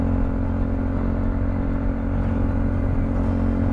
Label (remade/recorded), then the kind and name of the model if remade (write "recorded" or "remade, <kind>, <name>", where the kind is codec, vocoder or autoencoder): recorded